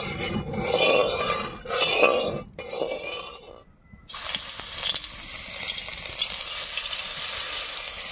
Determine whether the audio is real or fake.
real